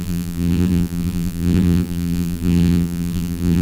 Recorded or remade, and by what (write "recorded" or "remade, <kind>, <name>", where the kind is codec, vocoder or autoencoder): remade, vocoder, BigVGAN v2